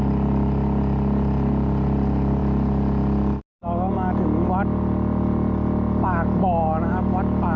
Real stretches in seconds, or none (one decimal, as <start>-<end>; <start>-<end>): 0.0-7.6